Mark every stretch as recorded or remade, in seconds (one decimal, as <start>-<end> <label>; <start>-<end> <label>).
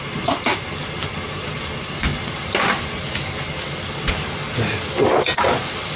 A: 0.0-6.0 recorded